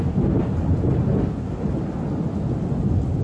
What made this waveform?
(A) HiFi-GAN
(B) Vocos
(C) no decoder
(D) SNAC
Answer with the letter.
C